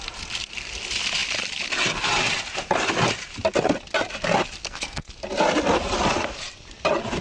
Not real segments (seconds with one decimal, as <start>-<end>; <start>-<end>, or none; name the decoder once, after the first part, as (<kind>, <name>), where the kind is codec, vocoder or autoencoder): 4.6-5.1 (codec, SNAC)

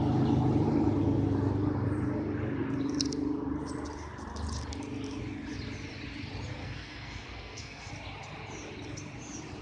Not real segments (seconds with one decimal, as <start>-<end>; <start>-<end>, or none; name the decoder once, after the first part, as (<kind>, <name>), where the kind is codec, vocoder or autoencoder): 6.6-7.9 (codec, SNAC)

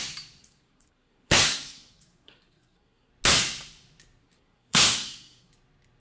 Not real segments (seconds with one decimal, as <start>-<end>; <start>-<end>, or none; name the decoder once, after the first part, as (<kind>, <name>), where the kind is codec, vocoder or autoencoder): 0.4-3.1 (codec, SNAC); 4.2-5.5

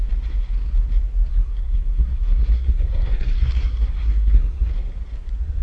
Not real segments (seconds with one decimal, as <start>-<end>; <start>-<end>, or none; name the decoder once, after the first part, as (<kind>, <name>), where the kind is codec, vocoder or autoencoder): 1.3-4.7 (codec, SNAC)

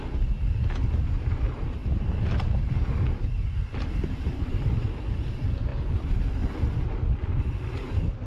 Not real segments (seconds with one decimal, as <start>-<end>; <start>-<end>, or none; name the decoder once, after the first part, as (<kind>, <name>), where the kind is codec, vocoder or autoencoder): none

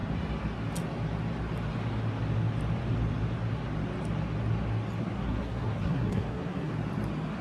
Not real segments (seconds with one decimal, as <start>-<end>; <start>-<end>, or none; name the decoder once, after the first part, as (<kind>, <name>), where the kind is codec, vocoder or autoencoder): 5.0-6.7 (codec, SNAC)

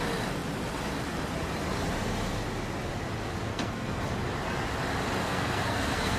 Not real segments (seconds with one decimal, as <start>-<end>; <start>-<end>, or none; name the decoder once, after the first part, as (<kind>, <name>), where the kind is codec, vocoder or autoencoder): 3.5-4.0 (codec, SNAC); 5.2-6.2

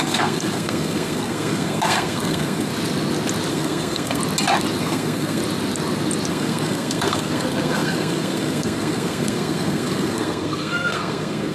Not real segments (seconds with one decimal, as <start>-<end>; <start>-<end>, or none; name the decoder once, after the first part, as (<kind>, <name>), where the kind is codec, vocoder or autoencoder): 0.0-2.7 (codec, SNAC); 3.5-4.2; 4.8-5.4; 6.3-11.5